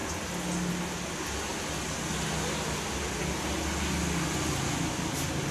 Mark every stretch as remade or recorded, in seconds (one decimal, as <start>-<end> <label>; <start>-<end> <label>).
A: 0.0-5.5 recorded